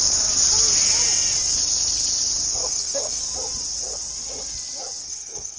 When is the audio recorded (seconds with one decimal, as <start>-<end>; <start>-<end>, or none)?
0.0-2.6; 3.2-5.0